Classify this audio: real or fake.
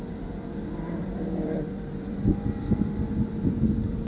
fake